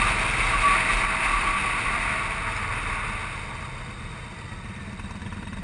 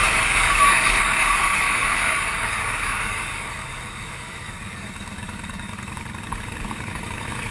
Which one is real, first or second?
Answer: first